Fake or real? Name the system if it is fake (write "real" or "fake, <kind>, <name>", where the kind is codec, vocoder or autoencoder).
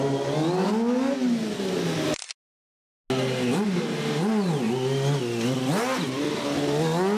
real